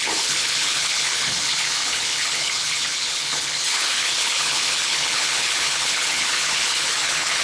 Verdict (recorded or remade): remade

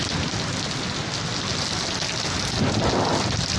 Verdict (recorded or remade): recorded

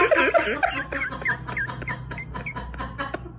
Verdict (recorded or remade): recorded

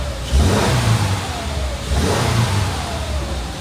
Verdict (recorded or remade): remade